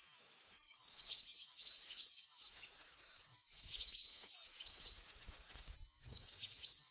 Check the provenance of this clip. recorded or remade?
remade